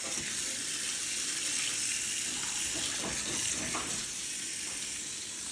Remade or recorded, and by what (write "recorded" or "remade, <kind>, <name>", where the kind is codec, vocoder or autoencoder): recorded